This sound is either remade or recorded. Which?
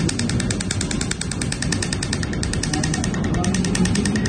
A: recorded